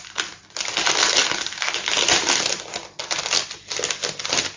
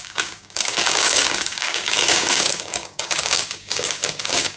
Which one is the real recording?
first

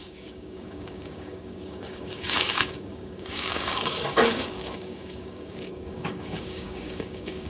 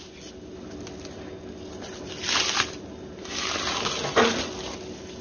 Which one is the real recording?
second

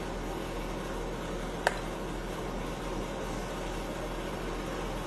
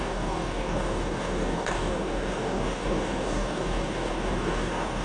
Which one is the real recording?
first